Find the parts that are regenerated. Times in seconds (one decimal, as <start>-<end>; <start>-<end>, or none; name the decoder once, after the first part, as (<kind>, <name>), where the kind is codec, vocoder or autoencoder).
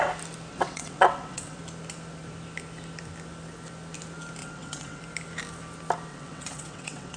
0.5-1.6 (vocoder, WaveNeXt); 4.4-5.0; 6.1-7.2